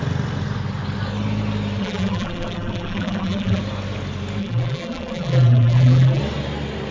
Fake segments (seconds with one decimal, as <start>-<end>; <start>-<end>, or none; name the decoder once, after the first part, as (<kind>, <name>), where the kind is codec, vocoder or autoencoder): 1.8-3.6 (vocoder, BigVGAN v2); 4.4-6.2